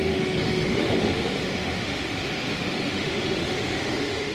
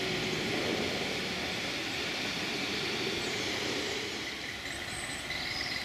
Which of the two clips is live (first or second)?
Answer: second